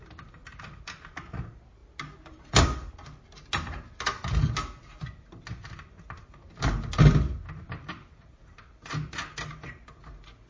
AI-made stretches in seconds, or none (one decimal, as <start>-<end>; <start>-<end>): none